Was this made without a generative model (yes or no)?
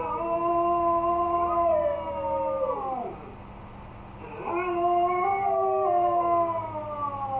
yes